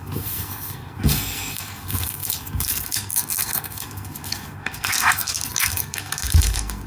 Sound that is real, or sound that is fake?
fake